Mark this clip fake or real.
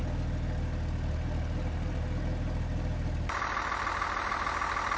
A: real